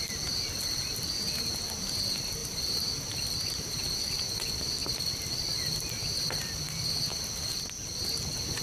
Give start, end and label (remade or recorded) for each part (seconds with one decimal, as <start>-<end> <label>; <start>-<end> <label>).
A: 0.0-4.8 recorded; 4.8-7.2 remade; 7.2-8.6 recorded